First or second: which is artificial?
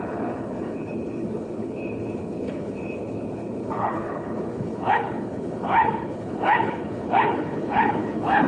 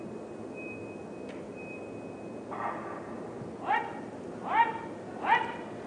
first